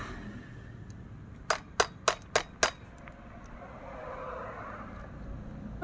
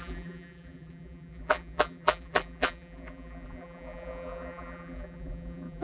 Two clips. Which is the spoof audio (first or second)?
second